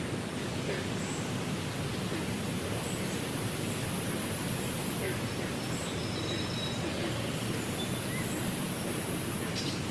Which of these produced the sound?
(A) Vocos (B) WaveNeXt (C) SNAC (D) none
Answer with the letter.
D